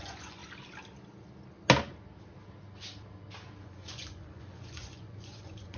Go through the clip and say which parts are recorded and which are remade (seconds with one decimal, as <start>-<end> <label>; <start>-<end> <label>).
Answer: 0.0-0.4 remade; 0.4-3.6 recorded; 3.6-5.8 remade